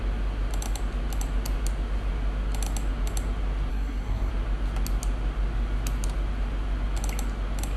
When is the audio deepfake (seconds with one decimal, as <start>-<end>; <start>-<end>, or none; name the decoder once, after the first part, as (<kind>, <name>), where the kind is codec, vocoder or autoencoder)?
3.7-4.3 (codec, SNAC)